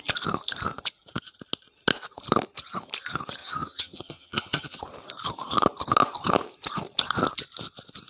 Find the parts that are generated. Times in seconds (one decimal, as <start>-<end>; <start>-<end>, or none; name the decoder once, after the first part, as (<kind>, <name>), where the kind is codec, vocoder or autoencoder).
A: 3.4-4.8 (vocoder, HiFi-GAN)